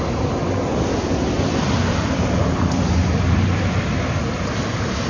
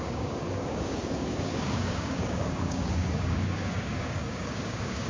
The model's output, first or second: second